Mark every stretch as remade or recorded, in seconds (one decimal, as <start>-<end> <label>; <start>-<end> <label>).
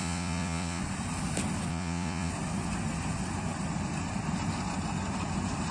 0.0-0.8 remade; 0.8-1.7 recorded; 1.7-2.3 remade; 2.3-5.7 recorded